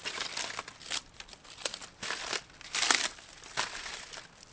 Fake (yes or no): no